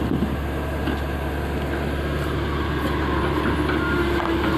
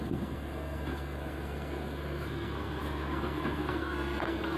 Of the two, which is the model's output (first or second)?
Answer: second